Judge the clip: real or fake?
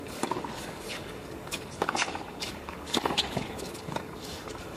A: fake